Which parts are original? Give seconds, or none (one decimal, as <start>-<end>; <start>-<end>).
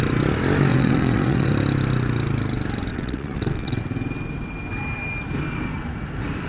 0.0-0.7; 1.5-2.9; 3.8-6.5